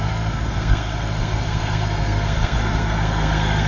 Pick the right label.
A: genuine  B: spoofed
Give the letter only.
B